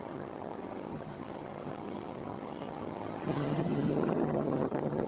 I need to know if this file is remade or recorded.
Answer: remade